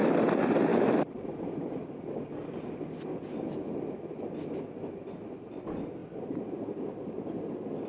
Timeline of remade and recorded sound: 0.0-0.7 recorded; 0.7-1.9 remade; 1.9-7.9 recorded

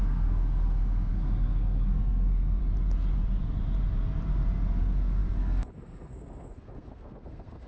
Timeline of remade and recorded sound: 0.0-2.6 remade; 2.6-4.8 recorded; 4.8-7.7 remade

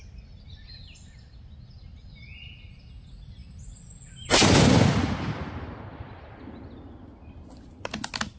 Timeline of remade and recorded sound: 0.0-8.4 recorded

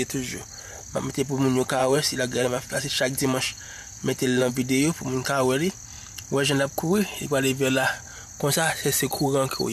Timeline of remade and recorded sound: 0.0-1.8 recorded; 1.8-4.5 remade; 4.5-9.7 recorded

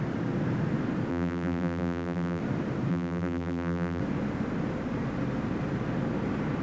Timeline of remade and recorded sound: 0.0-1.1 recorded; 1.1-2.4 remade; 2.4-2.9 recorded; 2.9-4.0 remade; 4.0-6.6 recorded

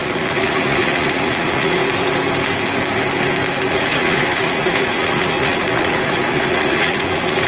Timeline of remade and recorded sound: 0.0-1.8 remade; 1.8-3.7 recorded; 3.7-7.5 remade

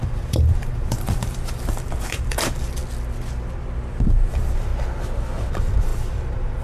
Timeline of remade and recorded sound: 0.0-2.8 remade; 2.8-4.3 recorded; 4.3-4.7 remade; 4.7-5.5 recorded; 5.5-6.6 remade